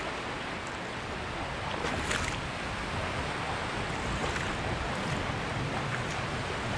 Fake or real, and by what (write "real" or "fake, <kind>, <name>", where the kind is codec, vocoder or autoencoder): real